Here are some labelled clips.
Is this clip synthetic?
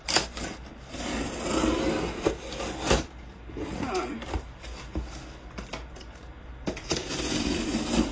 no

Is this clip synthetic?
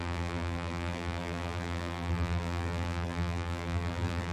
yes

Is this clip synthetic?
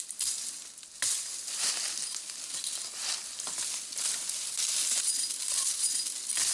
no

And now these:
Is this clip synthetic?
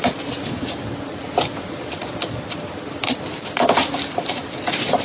no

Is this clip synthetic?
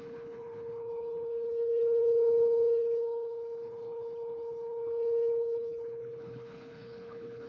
yes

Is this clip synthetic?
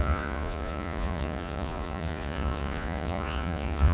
yes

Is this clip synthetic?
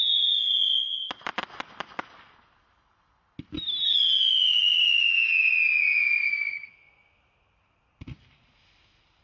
no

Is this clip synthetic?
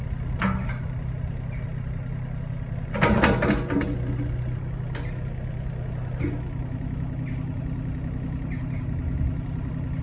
no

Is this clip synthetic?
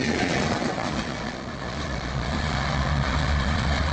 yes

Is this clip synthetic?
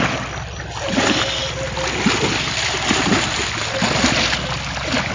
no